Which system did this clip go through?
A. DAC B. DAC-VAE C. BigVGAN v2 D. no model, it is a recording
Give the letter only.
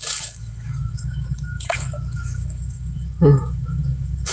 B